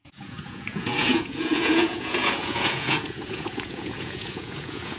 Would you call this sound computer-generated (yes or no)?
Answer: yes